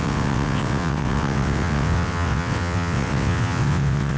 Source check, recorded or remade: remade